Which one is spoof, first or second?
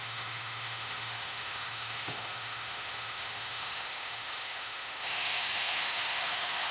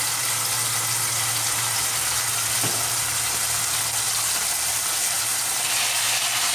first